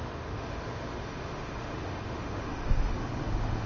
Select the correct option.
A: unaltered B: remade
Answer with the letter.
B